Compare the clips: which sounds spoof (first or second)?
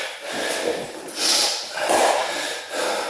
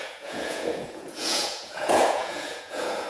second